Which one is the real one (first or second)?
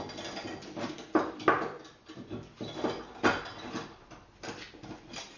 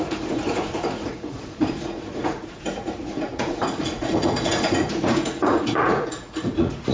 first